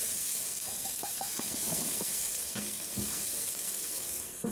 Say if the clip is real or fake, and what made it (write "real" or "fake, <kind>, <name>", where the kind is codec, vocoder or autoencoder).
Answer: fake, codec, SNAC